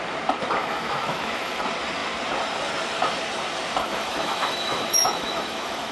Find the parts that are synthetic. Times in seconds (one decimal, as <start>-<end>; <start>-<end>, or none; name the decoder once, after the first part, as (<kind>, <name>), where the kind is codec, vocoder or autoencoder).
0.6-1.6 (autoencoder, DAC-VAE); 3.8-5.9